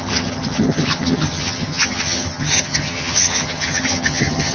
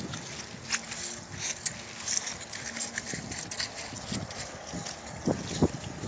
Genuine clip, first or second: second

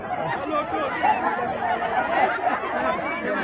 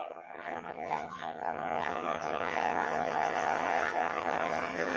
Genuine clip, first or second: first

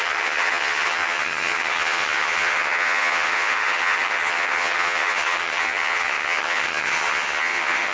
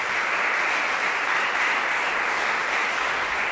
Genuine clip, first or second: second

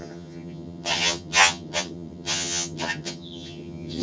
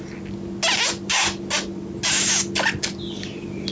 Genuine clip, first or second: second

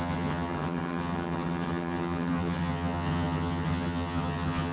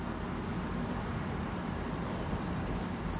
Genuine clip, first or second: second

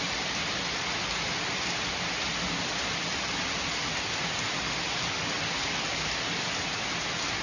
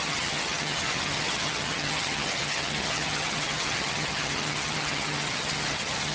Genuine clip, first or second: first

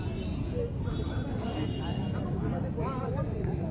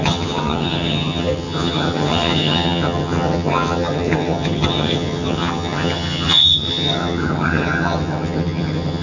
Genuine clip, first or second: first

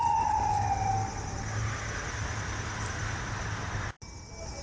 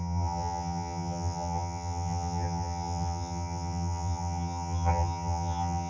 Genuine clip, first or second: first